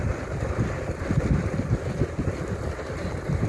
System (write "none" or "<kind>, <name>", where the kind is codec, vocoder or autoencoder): none